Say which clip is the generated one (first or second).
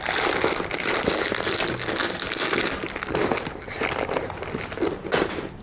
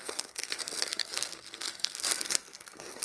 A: second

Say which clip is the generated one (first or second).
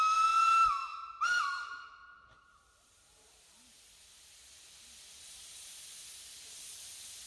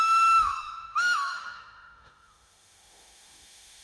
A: second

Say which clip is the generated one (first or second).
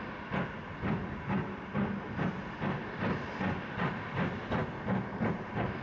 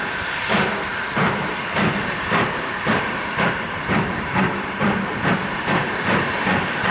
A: second